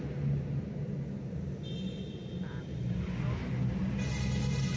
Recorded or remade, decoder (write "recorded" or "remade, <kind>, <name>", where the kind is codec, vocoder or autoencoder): recorded